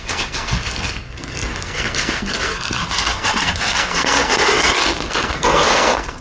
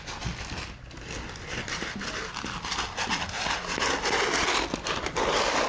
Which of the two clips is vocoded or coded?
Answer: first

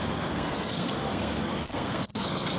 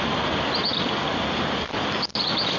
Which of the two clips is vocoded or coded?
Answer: first